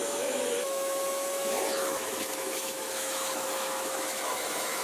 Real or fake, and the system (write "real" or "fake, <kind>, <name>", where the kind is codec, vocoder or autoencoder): fake, autoencoder, DAC-VAE